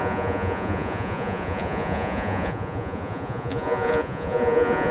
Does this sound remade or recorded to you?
remade